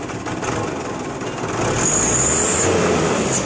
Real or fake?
real